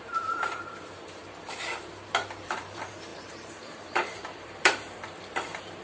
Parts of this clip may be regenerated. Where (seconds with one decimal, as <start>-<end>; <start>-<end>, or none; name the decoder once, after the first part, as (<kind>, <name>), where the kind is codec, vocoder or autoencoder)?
0.0-1.2 (vocoder, BigVGAN v2); 2.4-5.8